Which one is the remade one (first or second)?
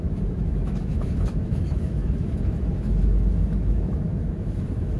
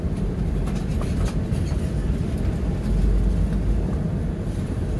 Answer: first